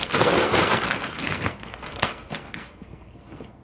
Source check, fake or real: fake